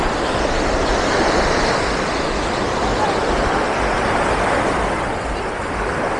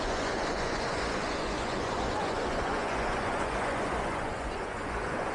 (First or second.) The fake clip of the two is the second